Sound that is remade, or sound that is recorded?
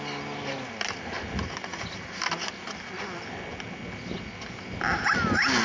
recorded